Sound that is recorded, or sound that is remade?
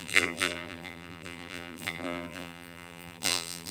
remade